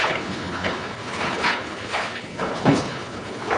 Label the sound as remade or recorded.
remade